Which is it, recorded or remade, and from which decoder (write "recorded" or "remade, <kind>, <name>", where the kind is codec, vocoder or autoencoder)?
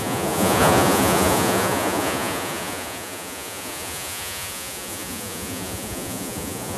remade, vocoder, Vocos